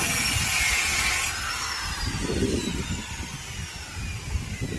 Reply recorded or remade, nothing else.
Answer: recorded